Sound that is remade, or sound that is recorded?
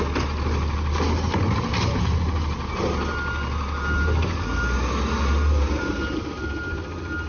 recorded